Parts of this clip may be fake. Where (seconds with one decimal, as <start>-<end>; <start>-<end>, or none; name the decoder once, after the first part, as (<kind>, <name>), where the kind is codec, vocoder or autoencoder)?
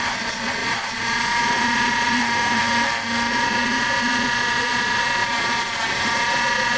0.0-2.2 (vocoder, Vocos); 3.3-6.8